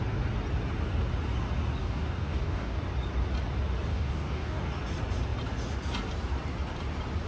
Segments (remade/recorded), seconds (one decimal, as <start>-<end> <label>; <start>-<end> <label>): 0.0-1.8 recorded; 1.8-2.8 remade; 2.8-3.9 recorded; 3.9-4.7 remade; 4.7-7.3 recorded

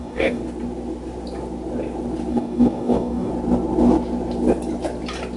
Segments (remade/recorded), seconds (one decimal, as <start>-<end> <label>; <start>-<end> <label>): 0.0-0.4 remade; 0.4-2.3 recorded; 2.3-3.3 remade; 3.3-5.4 recorded

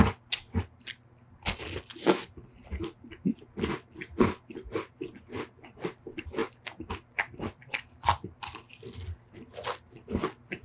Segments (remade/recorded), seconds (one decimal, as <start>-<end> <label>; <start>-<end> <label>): 0.0-10.6 recorded

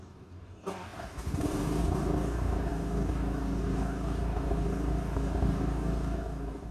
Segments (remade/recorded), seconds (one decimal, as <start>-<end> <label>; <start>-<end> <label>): 0.0-6.7 remade

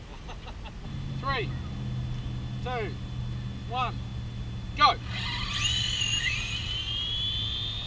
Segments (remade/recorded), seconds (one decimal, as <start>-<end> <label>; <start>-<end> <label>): 0.0-7.9 recorded

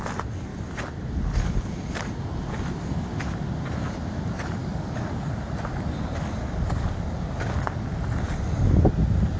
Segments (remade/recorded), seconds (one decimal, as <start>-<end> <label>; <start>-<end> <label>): 0.0-4.6 recorded; 4.6-5.3 remade; 5.3-9.4 recorded

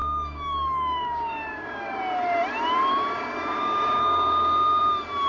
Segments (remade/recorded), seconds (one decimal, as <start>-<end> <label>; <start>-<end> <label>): 0.0-2.0 remade; 2.0-2.9 recorded; 2.9-4.8 remade; 4.8-5.3 recorded

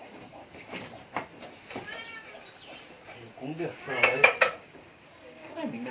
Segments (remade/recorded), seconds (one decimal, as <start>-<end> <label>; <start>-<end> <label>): 0.0-0.4 remade; 0.4-3.9 recorded; 3.9-5.9 remade